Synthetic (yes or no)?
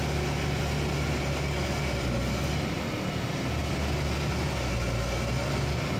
no